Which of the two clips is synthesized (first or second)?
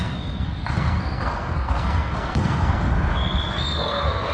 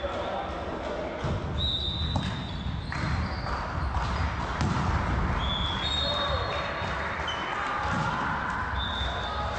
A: first